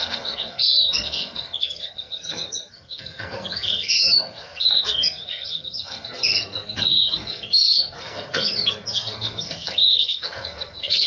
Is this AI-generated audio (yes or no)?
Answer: yes